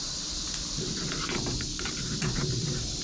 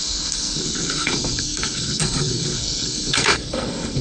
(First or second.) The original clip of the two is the first